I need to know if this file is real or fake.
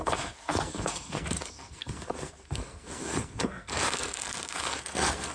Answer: fake